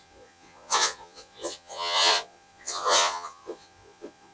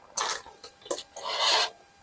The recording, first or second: second